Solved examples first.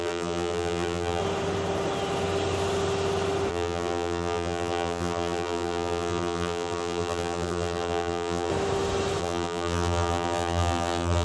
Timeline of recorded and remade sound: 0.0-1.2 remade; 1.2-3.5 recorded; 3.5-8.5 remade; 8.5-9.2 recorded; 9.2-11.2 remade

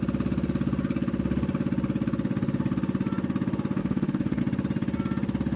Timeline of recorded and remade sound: 0.0-3.8 recorded; 3.8-4.4 remade; 4.4-5.6 recorded